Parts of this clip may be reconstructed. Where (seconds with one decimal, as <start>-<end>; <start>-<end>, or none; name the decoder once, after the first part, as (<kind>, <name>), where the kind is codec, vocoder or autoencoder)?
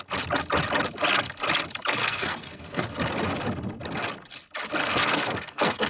2.0-2.8 (codec, SNAC); 4.8-5.9